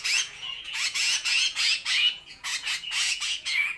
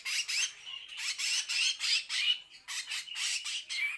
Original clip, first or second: second